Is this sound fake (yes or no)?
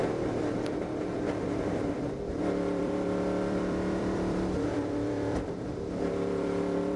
yes